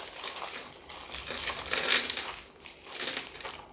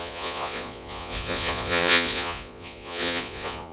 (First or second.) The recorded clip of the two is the first